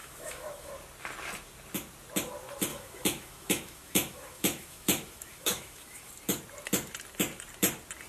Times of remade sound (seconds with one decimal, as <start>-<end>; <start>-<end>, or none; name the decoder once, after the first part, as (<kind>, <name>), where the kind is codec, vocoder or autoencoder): 0.0-0.7 (autoencoder, DAC-VAE); 2.7-6.1